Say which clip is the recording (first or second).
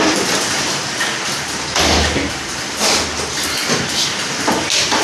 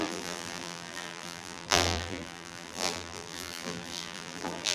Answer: first